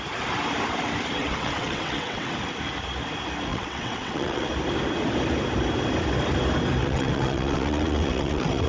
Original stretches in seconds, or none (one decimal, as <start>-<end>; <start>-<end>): 0.0-1.2; 2.3-3.5; 4.5-6.8